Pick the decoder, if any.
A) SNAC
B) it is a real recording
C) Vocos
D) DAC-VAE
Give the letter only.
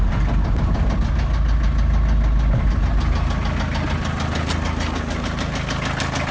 B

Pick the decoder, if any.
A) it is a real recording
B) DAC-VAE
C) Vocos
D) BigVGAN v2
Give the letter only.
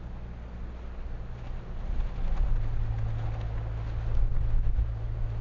A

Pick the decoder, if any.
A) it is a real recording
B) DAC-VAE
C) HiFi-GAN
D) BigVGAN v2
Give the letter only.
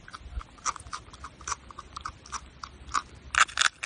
A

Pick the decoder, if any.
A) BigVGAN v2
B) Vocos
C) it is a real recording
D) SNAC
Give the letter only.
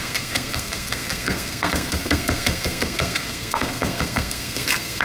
D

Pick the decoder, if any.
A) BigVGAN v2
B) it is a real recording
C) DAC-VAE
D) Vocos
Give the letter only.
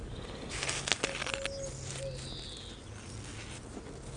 B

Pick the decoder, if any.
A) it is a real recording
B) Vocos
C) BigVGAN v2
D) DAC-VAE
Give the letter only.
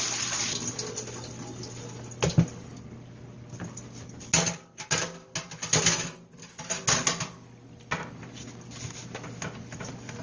A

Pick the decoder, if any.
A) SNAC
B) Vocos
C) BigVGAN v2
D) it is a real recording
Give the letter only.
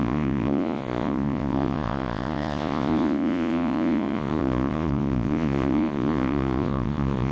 B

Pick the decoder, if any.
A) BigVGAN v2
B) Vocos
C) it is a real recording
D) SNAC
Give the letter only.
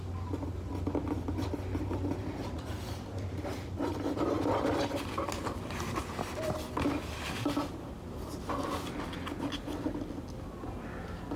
C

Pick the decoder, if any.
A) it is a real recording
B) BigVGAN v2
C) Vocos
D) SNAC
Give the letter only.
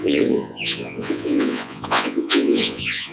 C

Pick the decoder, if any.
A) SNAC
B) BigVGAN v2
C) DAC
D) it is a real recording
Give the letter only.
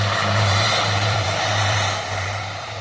B